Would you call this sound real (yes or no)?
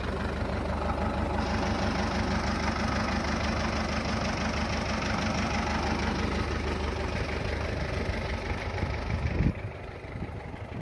yes